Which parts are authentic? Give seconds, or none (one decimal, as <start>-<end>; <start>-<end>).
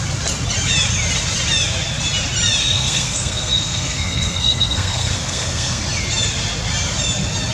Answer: 0.0-2.6; 5.8-7.5